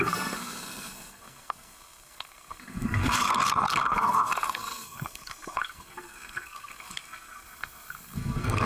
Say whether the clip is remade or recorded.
remade